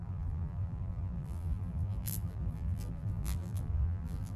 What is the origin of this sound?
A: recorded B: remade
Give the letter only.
B